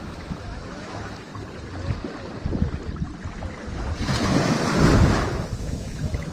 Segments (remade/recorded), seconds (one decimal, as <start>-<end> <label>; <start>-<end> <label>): 0.0-1.3 remade; 1.3-5.1 recorded; 5.1-6.3 remade